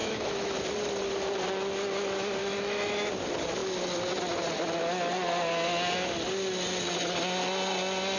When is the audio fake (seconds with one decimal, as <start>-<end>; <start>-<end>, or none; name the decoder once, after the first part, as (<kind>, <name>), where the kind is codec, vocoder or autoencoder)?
0.0-0.6 (autoencoder, DAC-VAE); 2.4-3.1